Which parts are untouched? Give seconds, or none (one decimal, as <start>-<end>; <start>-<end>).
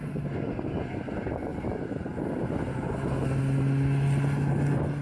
0.0-5.0